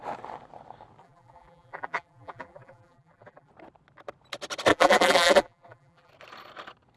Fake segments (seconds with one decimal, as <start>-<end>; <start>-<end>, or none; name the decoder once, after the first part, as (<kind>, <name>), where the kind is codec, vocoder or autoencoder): 1.0-3.5 (vocoder, BigVGAN v2); 4.7-6.1